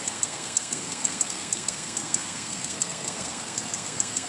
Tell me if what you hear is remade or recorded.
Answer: remade